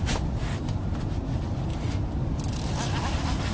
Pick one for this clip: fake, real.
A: real